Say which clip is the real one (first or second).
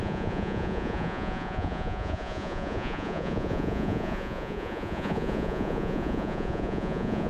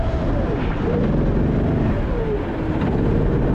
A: second